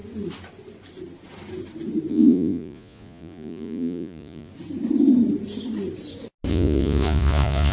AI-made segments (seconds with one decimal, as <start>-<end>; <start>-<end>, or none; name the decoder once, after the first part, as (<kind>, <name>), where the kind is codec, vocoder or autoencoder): 2.1-4.5 (vocoder, Vocos); 6.5-7.7